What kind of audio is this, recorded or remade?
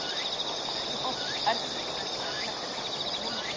remade